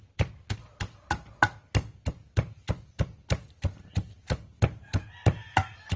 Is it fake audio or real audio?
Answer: real